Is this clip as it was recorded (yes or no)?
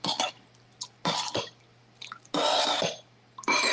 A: yes